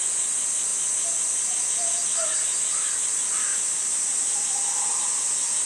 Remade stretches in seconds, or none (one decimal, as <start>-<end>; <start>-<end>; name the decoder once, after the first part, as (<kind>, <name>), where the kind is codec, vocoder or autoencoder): none